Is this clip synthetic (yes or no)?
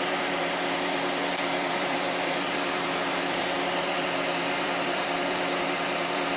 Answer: yes